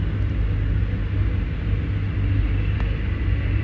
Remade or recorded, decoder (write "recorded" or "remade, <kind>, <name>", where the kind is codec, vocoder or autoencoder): recorded